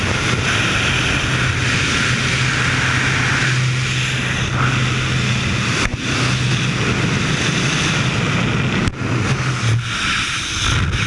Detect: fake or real real